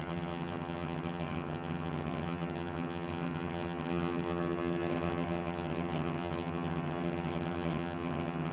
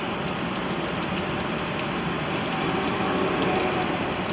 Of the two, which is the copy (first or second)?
first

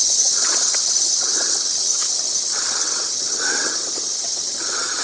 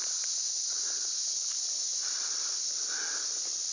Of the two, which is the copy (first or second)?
first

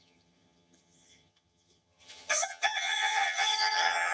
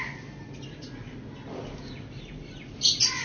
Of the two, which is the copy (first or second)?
first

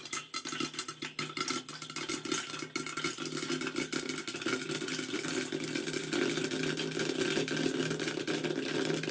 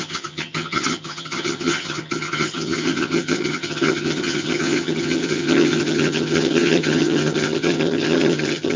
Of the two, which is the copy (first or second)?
second